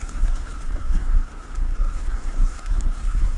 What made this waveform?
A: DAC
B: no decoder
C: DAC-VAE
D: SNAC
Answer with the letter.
D